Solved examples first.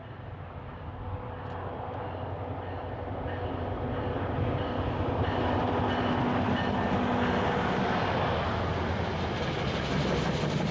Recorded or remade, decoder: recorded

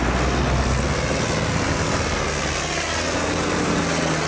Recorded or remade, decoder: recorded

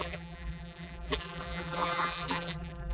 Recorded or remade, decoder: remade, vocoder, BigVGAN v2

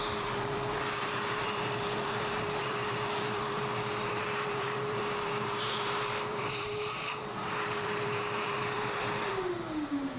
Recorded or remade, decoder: remade, vocoder, BigVGAN v2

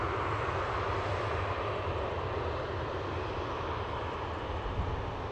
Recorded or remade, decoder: recorded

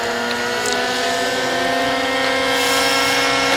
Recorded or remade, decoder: recorded